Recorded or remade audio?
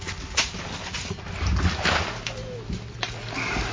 recorded